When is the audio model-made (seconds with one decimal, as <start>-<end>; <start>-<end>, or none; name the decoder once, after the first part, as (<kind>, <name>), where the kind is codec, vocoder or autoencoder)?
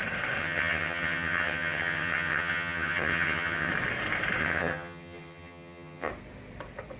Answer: 0.4-3.7 (vocoder, HiFi-GAN); 4.4-6.1